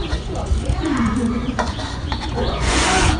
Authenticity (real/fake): fake